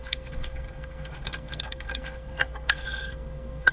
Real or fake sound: fake